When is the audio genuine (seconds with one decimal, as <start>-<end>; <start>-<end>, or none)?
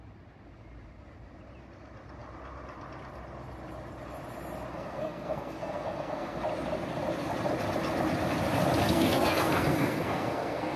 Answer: 0.0-4.7; 6.4-8.8